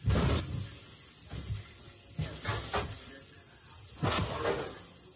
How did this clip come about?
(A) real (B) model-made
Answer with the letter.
A